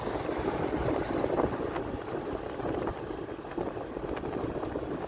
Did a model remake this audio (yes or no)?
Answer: no